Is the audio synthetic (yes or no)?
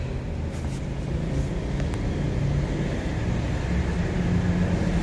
no